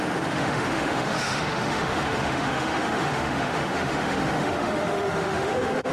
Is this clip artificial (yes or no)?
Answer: yes